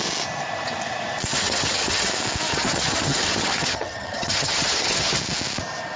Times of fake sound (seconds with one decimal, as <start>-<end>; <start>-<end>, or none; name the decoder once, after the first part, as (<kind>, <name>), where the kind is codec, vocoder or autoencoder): 1.3-2.1 (vocoder, HiFi-GAN); 2.5-5.2